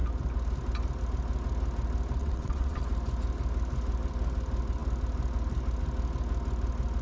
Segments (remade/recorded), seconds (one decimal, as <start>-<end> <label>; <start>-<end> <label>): 0.0-2.2 recorded; 2.2-2.8 remade; 2.8-7.0 recorded